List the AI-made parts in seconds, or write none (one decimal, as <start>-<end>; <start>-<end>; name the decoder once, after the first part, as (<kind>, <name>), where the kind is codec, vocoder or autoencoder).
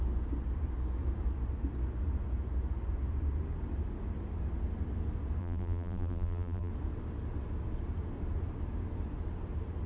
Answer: 5.4-6.7 (vocoder, BigVGAN v2)